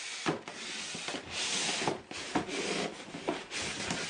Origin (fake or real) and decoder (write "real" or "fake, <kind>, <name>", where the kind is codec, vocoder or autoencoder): real